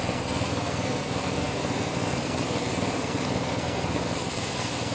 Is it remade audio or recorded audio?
remade